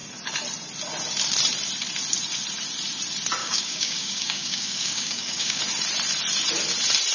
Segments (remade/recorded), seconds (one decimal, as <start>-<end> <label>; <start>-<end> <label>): 0.0-3.4 recorded; 3.4-5.6 remade; 5.6-7.1 recorded